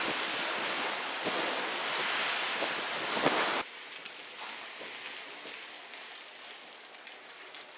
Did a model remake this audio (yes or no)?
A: no